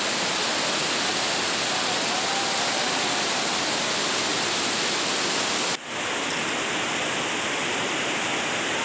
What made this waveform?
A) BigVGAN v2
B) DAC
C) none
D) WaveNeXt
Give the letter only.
C